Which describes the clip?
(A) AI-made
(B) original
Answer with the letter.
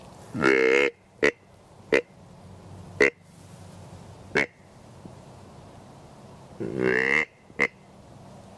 B